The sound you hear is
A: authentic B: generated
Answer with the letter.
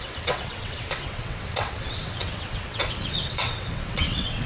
B